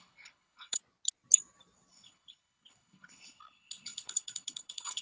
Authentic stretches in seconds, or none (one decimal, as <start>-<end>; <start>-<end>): 0.8-1.9